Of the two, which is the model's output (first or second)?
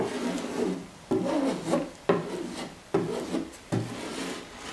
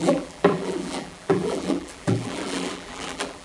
second